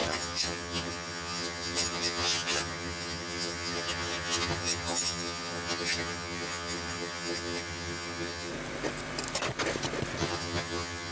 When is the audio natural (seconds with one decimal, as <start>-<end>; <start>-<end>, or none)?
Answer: 8.5-10.2